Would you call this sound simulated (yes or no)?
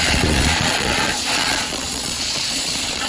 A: yes